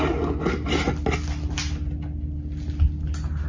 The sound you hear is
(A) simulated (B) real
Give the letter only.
B